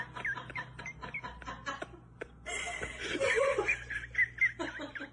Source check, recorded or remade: recorded